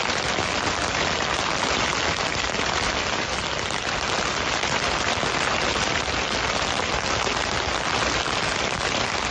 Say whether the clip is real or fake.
real